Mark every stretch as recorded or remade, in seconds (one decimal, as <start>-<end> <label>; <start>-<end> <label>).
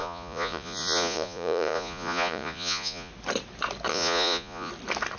0.0-3.1 remade; 3.1-3.9 recorded; 3.9-4.7 remade; 4.7-5.2 recorded